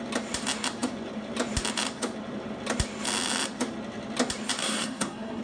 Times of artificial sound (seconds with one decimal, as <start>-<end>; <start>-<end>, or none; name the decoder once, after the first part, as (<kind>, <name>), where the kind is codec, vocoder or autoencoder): 4.6-5.4 (codec, SNAC)